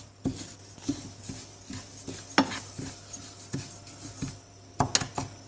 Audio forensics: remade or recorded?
recorded